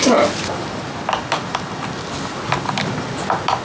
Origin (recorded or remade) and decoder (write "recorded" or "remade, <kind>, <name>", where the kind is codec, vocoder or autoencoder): recorded